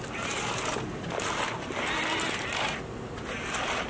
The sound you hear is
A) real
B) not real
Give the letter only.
A